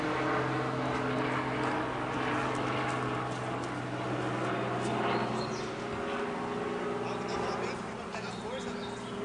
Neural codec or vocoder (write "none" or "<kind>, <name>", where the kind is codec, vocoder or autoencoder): none